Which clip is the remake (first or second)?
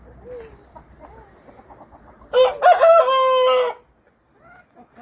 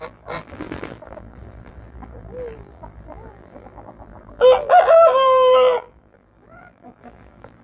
second